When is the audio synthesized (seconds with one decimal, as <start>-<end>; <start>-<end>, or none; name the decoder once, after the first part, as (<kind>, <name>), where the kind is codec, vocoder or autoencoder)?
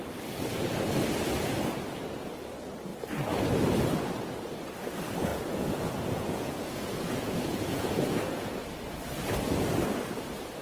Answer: 5.3-8.6 (vocoder, Vocos)